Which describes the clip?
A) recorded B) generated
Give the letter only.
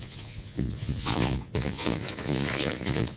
B